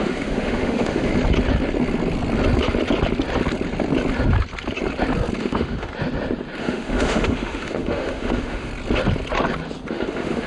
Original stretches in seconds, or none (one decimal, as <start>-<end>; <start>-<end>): 1.1-5.4; 5.9-6.6; 8.7-9.9